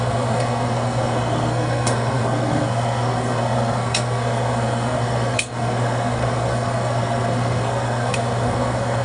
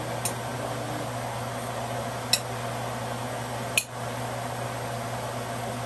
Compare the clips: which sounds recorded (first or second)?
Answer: second